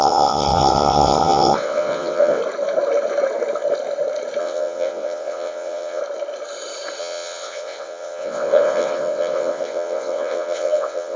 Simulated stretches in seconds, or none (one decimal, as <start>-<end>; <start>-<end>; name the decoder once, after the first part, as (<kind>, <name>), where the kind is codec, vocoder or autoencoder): 0.0-2.4 (vocoder, WaveNeXt); 4.4-6.0; 7.0-11.2